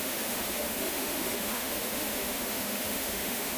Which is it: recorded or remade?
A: remade